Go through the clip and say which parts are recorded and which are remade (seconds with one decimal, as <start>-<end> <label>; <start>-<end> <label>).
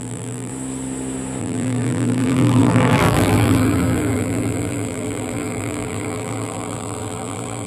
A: 0.0-0.5 remade; 0.5-1.4 recorded; 1.4-7.7 remade